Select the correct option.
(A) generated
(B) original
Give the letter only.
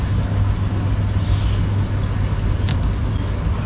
B